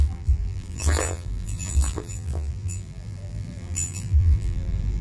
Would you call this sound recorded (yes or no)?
no